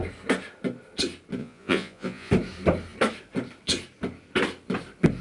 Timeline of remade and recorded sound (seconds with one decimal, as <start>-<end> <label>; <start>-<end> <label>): 0.0-1.4 recorded; 1.4-2.3 remade; 2.3-5.2 recorded